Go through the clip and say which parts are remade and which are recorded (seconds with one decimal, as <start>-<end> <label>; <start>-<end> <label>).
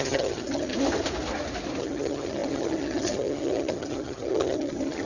0.0-0.7 remade; 0.7-1.8 recorded; 1.8-5.1 remade